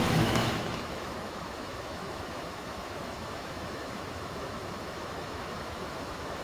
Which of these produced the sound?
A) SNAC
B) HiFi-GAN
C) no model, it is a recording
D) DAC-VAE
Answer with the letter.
D